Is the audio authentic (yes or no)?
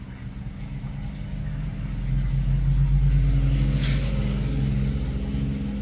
yes